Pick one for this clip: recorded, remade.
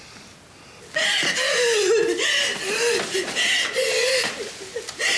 recorded